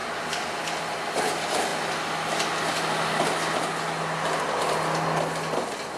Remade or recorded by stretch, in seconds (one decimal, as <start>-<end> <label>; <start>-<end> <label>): 0.0-6.0 recorded